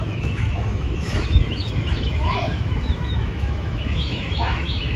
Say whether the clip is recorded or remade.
remade